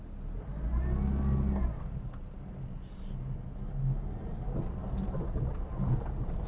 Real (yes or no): yes